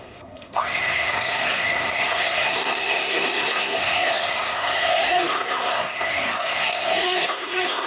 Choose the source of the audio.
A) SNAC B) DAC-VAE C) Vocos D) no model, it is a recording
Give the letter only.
A